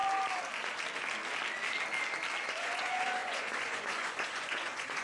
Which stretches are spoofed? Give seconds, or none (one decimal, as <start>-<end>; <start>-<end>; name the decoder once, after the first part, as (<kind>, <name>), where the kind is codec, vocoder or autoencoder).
2.5-5.0 (vocoder, Vocos)